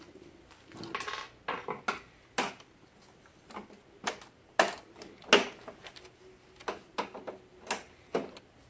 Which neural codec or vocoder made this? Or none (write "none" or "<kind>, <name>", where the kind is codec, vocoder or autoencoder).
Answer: none